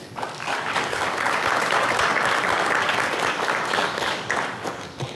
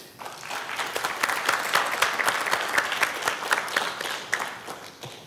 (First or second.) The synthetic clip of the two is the first